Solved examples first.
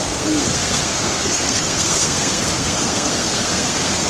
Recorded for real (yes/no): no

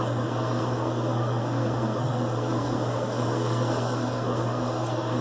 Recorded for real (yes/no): no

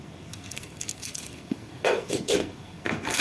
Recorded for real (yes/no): no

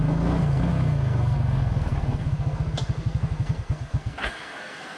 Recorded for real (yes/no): no